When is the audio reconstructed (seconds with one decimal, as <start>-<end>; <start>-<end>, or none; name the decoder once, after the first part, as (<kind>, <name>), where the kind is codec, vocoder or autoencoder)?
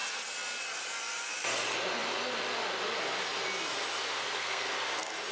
4.2-4.7 (codec, SNAC)